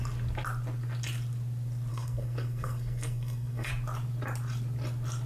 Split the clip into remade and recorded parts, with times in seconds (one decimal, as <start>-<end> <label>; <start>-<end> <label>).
0.0-1.9 recorded; 1.9-3.7 remade; 3.7-5.3 recorded